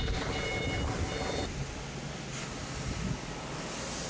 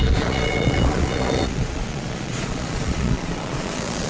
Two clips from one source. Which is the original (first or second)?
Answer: first